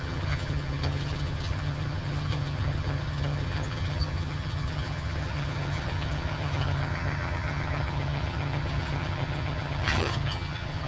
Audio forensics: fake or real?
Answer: fake